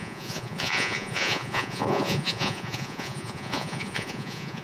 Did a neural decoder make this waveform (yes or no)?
yes